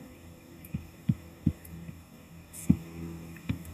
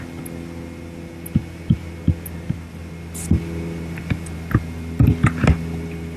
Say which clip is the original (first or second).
second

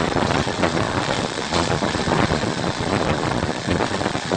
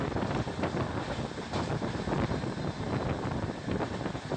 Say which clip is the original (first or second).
second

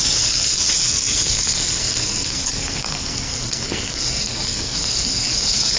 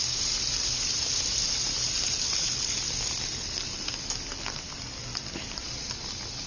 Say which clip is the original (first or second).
second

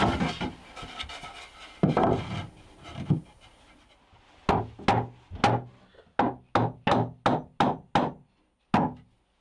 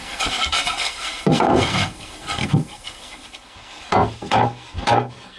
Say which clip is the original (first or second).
first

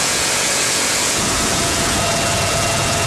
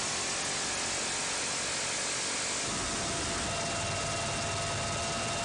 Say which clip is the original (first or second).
second